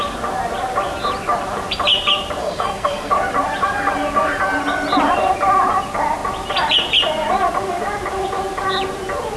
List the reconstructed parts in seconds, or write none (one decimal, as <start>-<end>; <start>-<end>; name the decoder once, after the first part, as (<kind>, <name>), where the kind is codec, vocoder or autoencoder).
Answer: 2.4-3.1 (codec, SNAC)